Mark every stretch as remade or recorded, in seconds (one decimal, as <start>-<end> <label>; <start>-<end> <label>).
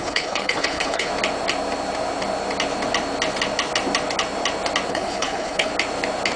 0.0-1.1 remade; 1.1-4.9 recorded; 4.9-5.7 remade; 5.7-6.4 recorded